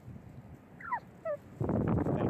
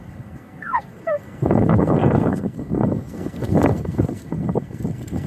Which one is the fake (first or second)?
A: second